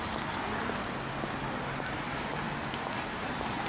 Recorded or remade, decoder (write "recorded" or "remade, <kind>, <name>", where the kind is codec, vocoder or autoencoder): recorded